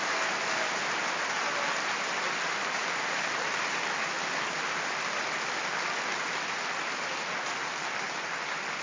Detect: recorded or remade recorded